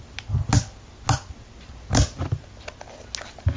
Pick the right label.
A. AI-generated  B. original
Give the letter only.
B